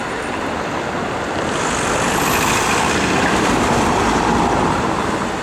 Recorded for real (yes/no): yes